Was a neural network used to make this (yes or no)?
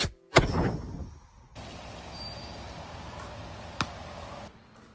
no